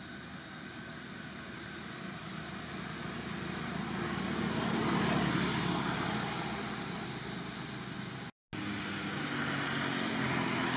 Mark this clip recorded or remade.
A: recorded